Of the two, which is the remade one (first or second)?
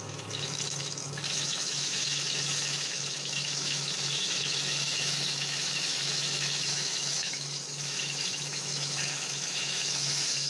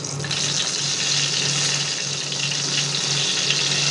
first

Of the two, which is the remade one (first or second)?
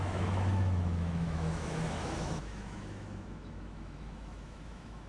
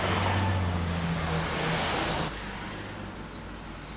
first